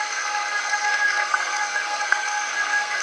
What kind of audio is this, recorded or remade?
remade